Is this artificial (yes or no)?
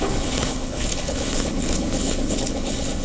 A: yes